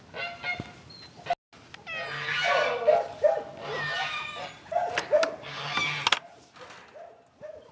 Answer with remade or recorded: recorded